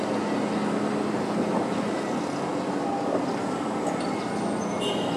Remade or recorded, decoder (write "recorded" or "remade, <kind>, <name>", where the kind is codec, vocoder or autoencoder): recorded